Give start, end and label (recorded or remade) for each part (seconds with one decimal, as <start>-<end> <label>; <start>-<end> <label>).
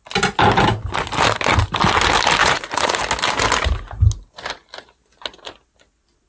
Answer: 0.0-2.4 recorded; 2.4-3.0 remade; 3.0-6.3 recorded